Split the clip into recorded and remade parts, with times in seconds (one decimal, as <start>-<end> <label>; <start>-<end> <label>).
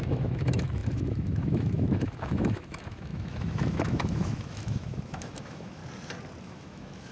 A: 0.0-5.8 remade; 5.8-6.4 recorded; 6.4-7.1 remade